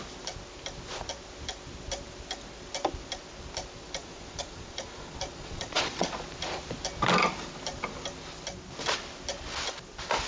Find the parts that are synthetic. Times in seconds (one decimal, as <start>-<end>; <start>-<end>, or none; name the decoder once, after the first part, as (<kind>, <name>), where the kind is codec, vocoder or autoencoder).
4.0-6.1 (vocoder, Vocos)